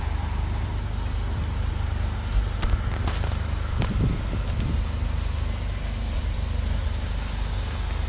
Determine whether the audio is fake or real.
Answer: real